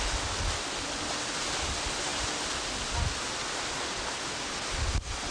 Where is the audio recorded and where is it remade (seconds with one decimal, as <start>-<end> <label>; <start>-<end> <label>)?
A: 0.0-5.3 recorded